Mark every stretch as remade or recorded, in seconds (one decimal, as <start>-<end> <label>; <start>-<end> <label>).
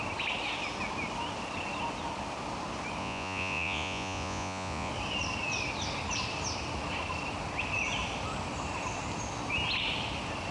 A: 0.0-3.0 recorded; 3.0-4.9 remade; 4.9-10.5 recorded